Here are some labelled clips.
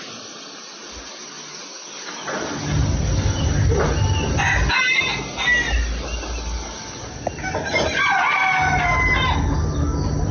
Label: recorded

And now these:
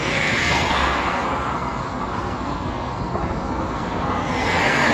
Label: remade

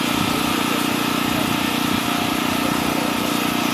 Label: recorded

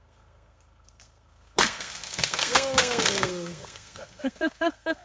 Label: remade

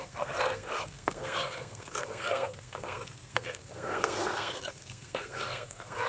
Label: remade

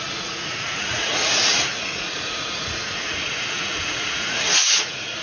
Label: remade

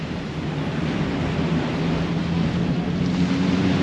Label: recorded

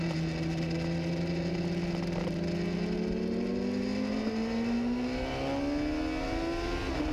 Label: recorded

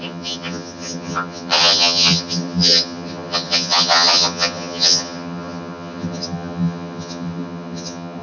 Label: remade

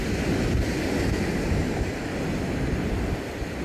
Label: recorded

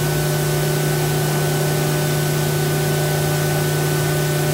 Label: recorded